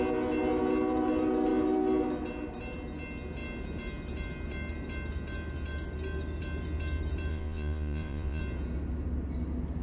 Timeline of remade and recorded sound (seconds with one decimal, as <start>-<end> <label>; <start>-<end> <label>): 0.0-7.3 recorded; 7.3-8.4 remade; 8.4-9.8 recorded